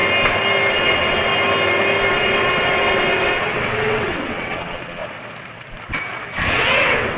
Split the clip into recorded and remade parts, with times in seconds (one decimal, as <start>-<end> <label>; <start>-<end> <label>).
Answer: 0.0-0.7 recorded; 0.7-1.3 remade; 1.3-2.1 recorded; 2.1-5.0 remade; 5.0-6.5 recorded; 6.5-7.2 remade